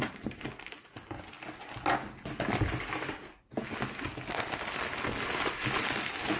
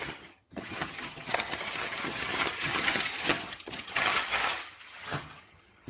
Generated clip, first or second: second